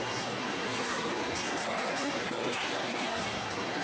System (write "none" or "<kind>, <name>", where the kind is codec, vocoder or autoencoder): codec, SNAC